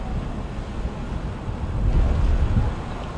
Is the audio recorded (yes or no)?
yes